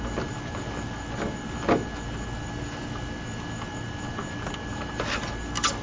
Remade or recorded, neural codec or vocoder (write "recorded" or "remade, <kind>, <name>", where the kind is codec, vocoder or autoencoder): recorded